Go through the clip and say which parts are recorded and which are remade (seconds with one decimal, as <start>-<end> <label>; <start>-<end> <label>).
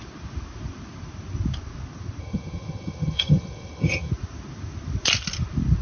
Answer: 0.0-2.2 recorded; 2.2-4.1 remade; 4.1-5.8 recorded